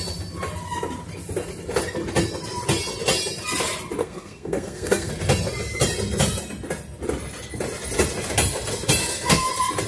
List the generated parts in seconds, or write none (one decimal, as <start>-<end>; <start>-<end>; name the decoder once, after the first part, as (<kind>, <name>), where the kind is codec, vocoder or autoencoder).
4.0-5.1 (codec, SNAC); 9.0-9.5